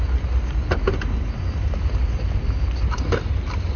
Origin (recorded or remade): recorded